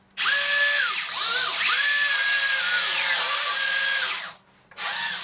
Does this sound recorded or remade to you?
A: recorded